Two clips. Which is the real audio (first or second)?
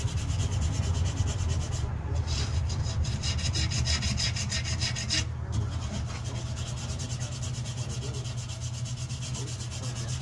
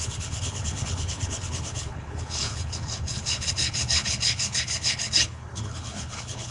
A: first